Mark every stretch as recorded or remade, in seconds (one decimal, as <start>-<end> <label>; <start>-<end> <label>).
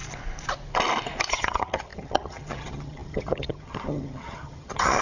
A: 0.0-1.3 recorded; 1.3-5.0 remade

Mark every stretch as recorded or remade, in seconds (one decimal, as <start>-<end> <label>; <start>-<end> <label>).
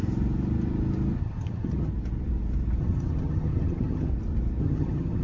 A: 0.0-1.2 recorded; 1.2-1.9 remade; 1.9-2.8 recorded; 2.8-4.1 remade; 4.1-4.6 recorded; 4.6-5.2 remade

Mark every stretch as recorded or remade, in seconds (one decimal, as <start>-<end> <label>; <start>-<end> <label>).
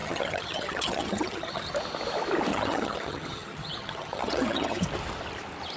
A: 0.0-1.7 remade; 1.7-2.5 recorded; 2.5-4.8 remade; 4.8-5.8 recorded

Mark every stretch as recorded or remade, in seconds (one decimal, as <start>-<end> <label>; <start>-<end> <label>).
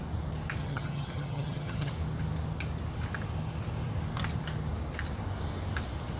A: 0.0-0.6 recorded; 0.6-1.9 remade; 1.9-6.2 recorded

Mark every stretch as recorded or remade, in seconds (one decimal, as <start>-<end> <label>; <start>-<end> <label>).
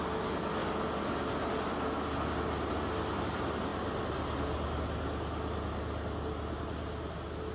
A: 0.0-7.5 recorded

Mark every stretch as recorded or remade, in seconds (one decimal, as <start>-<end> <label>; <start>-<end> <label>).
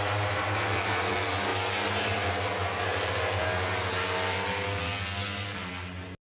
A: 0.0-6.3 recorded